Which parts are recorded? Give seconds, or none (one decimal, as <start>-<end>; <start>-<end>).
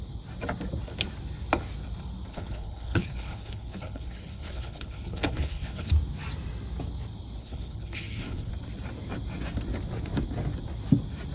0.0-2.3; 5.9-7.4; 8.5-11.3